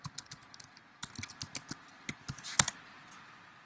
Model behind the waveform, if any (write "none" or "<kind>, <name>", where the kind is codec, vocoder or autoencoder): none